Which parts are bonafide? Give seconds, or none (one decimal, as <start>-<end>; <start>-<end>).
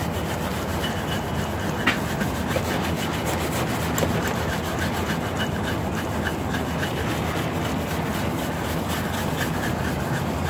0.0-10.5